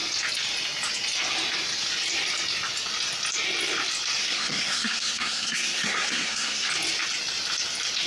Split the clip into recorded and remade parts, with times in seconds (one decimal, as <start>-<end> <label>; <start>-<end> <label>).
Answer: 0.0-4.2 recorded; 4.2-6.7 remade; 6.7-8.1 recorded